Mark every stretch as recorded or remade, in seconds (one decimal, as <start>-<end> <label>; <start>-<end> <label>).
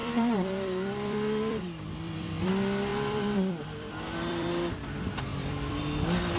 0.0-2.5 remade; 2.5-2.9 recorded; 2.9-4.5 remade; 4.5-5.3 recorded; 5.3-5.8 remade; 5.8-6.4 recorded